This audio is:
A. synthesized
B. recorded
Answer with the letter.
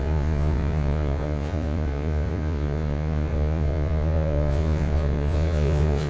A